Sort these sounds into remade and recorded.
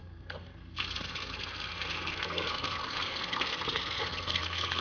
remade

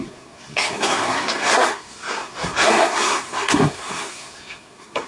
remade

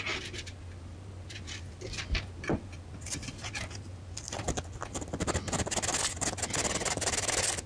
recorded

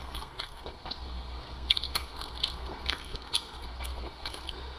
remade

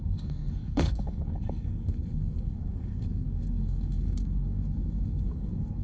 remade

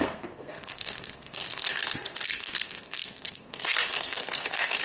remade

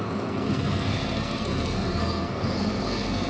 remade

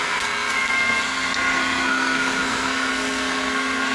remade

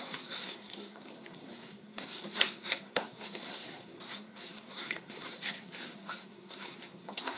remade